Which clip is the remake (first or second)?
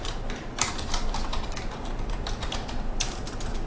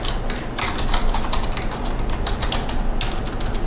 first